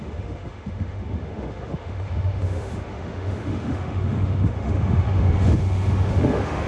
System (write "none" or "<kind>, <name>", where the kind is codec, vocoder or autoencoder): autoencoder, DAC-VAE